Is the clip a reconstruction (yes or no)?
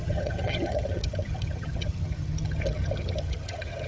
yes